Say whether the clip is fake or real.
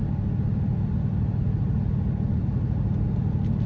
real